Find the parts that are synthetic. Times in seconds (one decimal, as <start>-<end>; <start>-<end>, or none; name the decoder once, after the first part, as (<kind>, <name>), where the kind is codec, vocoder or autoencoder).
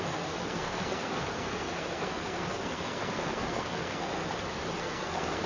0.0-4.2 (codec, SNAC); 4.8-5.5